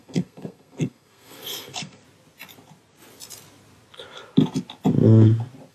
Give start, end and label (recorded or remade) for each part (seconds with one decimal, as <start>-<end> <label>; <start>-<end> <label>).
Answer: 0.0-2.0 remade; 2.0-5.7 recorded